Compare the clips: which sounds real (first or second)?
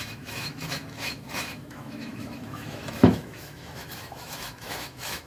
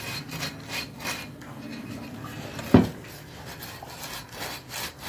second